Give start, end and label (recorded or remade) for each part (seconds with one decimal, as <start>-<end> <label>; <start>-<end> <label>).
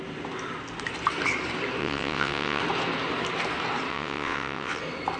0.0-1.8 recorded; 1.8-2.6 remade; 2.6-3.9 recorded; 3.9-4.8 remade; 4.8-5.2 recorded